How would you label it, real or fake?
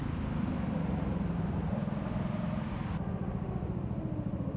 real